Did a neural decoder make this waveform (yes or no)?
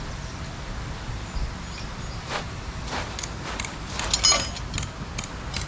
no